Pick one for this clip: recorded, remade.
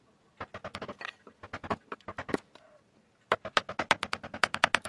recorded